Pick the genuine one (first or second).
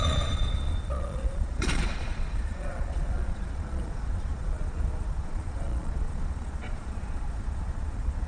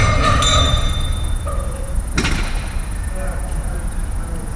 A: second